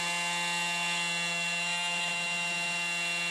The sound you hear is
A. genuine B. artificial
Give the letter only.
A